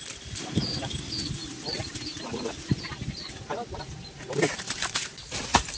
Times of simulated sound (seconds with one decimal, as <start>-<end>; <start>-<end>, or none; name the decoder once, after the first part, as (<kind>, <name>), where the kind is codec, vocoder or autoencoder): 0.0-5.8 (vocoder, BigVGAN v2)